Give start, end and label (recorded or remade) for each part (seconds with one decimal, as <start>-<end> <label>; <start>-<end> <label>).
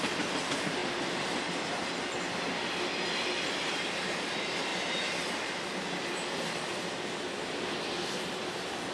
0.0-0.8 remade; 0.8-3.1 recorded; 3.1-4.7 remade; 4.7-5.2 recorded; 5.2-6.7 remade; 6.7-7.3 recorded; 7.3-8.9 remade